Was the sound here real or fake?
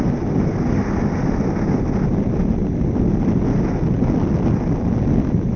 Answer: real